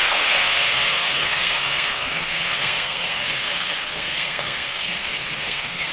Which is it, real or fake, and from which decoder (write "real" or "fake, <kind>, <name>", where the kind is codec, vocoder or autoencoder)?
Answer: fake, codec, SNAC